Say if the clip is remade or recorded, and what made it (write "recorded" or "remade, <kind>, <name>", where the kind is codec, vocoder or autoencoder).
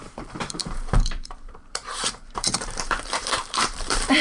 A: remade, vocoder, BigVGAN v2